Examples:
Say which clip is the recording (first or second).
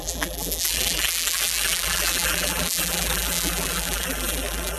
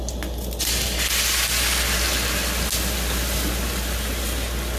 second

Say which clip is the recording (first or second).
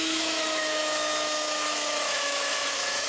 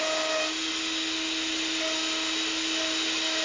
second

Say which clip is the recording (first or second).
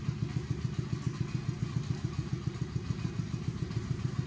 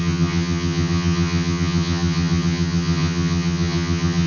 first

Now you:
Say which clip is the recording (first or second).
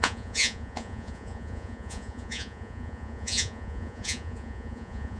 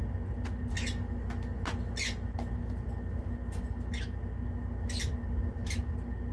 second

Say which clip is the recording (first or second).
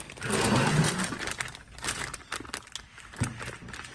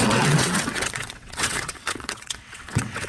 first